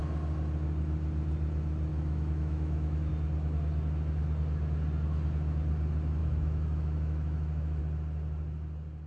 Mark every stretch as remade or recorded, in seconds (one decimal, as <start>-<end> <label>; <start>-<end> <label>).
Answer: 0.0-1.9 recorded; 1.9-3.1 remade; 3.1-6.2 recorded; 6.2-7.8 remade; 7.8-9.1 recorded